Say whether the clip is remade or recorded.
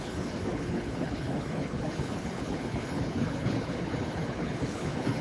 remade